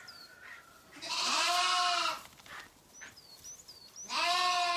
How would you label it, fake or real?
real